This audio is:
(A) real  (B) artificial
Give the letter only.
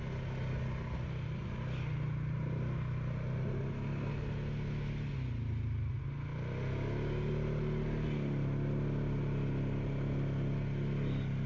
A